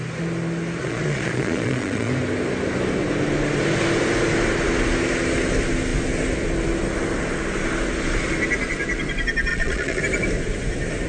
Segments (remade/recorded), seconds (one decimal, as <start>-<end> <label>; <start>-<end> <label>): 0.0-0.8 recorded; 0.8-2.1 remade; 2.1-9.5 recorded; 9.5-10.0 remade; 10.0-11.1 recorded